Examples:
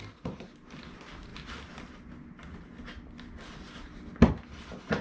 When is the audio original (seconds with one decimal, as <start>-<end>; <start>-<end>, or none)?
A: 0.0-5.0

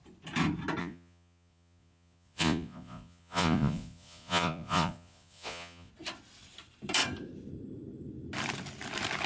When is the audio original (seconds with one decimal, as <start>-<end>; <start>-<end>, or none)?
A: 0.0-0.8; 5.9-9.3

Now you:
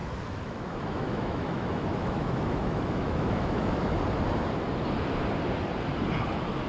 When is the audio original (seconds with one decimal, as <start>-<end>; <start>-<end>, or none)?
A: 4.0-6.7